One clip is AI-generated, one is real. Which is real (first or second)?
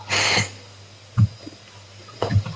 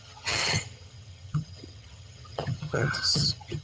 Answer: first